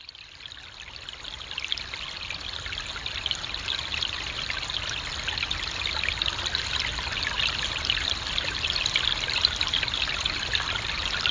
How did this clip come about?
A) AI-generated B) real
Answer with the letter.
B